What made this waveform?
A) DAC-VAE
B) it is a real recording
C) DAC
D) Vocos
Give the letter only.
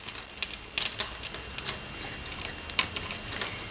B